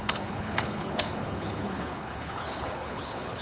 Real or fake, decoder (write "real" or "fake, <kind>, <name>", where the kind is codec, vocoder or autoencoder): fake, codec, HILCodec